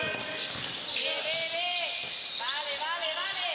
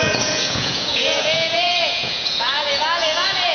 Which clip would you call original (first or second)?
first